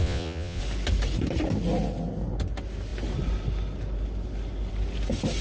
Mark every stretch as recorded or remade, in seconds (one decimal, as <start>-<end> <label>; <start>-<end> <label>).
0.0-0.6 remade; 0.6-5.4 recorded